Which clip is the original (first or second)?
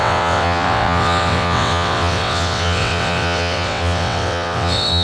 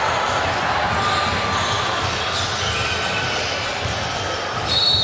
second